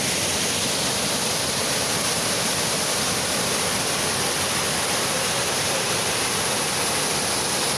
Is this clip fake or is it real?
real